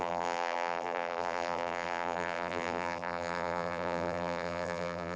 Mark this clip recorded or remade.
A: remade